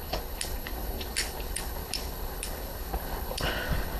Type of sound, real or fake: fake